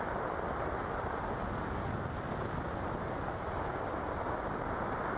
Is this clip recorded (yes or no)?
yes